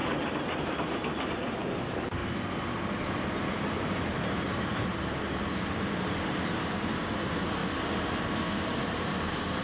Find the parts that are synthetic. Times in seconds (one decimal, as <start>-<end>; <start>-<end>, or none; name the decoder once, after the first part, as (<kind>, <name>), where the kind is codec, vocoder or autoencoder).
0.6-2.2 (vocoder, BigVGAN v2); 3.5-7.6; 8.5-9.6